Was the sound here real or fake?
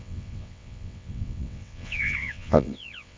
fake